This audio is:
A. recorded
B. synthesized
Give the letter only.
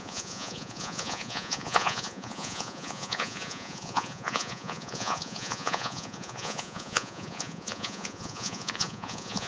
B